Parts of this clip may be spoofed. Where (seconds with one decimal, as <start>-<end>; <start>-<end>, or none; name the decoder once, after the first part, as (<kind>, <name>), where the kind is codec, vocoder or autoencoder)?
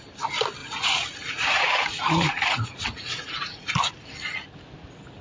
0.6-3.7 (vocoder, Vocos)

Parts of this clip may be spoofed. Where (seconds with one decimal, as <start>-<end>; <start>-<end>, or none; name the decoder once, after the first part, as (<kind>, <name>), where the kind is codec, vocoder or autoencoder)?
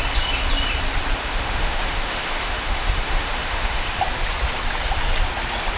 1.2-4.0 (autoencoder, DAC-VAE)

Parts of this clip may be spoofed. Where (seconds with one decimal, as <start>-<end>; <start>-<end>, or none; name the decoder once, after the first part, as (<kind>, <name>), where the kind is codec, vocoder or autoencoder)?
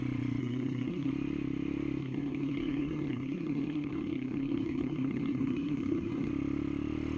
0.4-1.1 (codec, SNAC); 2.0-6.3